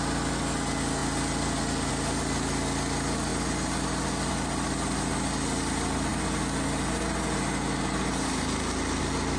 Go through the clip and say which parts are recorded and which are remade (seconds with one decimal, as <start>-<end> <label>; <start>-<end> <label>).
0.0-9.4 recorded